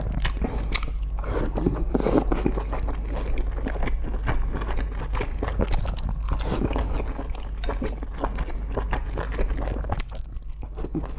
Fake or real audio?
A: real